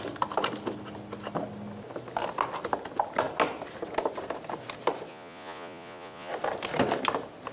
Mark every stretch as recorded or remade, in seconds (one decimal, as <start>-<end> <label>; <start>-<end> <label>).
0.0-5.1 recorded; 5.1-6.3 remade; 6.3-7.5 recorded